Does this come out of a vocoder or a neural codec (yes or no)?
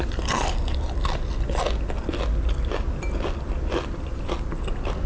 no